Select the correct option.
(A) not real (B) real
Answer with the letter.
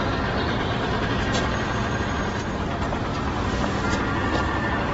B